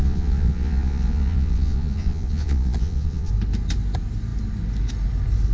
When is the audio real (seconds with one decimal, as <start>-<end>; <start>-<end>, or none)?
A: 3.3-5.5